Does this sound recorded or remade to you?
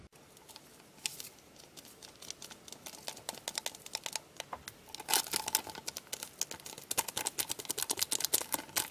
recorded